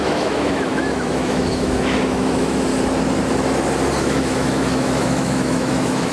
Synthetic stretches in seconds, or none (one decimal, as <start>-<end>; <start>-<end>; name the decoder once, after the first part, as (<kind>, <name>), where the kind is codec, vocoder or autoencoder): 0.0-2.7 (autoencoder, DAC-VAE); 4.0-6.1